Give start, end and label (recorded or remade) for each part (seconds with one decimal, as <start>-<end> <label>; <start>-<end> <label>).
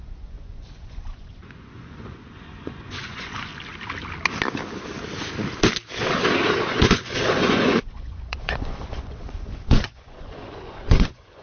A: 0.0-3.5 remade; 3.5-6.7 recorded; 6.7-11.4 remade